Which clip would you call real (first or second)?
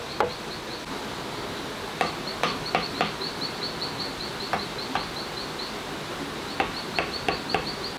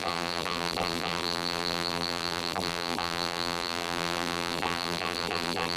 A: first